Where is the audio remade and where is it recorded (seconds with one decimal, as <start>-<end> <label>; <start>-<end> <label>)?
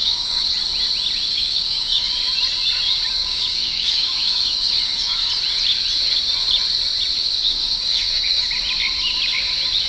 0.0-0.5 remade; 0.5-1.3 recorded; 1.3-2.1 remade; 2.1-3.2 recorded; 3.2-5.3 remade; 5.3-7.2 recorded; 7.2-8.4 remade; 8.4-9.9 recorded